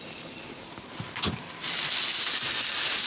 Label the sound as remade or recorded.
recorded